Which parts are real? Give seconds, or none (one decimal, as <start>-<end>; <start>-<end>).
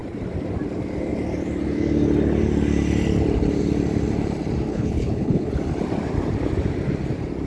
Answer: 0.0-4.7; 5.5-7.5